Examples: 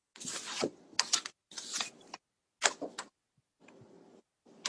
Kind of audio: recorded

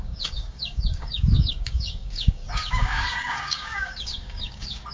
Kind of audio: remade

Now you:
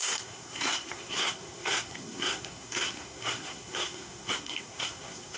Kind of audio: remade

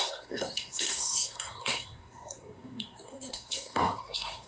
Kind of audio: remade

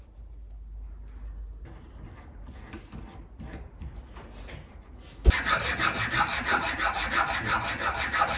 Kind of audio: recorded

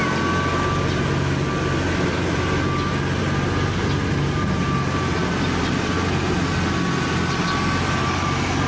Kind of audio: recorded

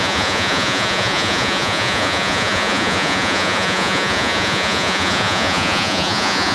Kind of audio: remade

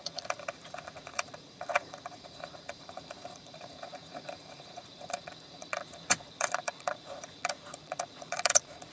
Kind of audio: remade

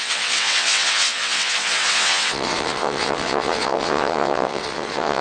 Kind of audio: remade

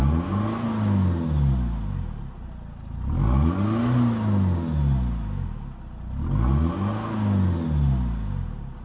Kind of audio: recorded